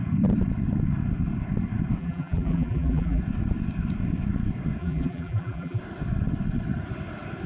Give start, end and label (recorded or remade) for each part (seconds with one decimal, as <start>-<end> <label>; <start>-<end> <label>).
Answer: 0.0-2.0 recorded; 2.0-3.2 remade; 3.2-4.8 recorded; 4.8-5.8 remade; 5.8-7.5 recorded